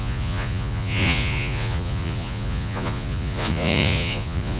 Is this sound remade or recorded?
remade